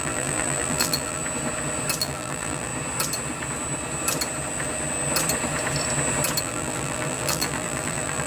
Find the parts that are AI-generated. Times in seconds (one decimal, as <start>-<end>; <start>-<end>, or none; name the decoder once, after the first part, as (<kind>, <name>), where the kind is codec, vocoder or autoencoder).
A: 0.0-1.2 (vocoder, BigVGAN v2); 2.0-2.7; 6.4-8.3